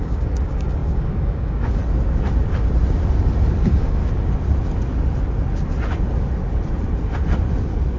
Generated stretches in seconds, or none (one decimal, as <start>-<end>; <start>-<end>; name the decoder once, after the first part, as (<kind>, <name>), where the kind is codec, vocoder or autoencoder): 0.0-1.8 (codec, DAC); 3.6-4.0